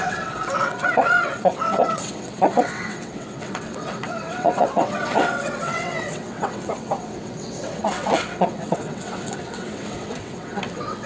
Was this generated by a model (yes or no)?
yes